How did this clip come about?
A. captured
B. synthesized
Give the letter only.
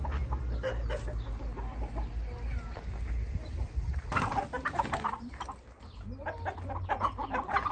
A